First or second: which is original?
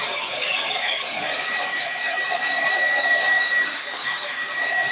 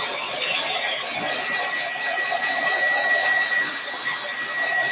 second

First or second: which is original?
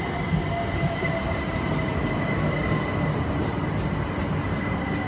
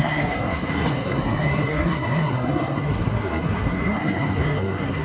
first